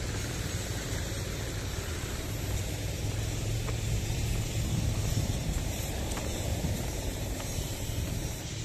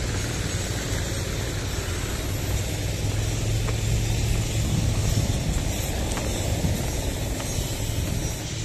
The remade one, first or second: first